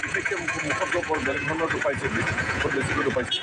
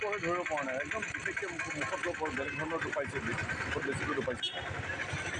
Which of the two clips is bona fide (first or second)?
second